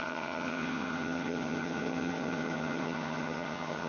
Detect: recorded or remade remade